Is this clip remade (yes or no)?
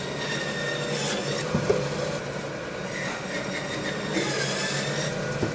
no